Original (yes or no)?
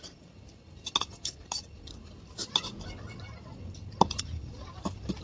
yes